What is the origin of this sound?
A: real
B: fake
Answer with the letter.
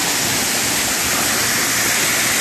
A